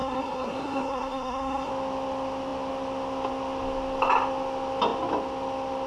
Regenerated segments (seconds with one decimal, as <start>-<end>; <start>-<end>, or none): 0.0-1.7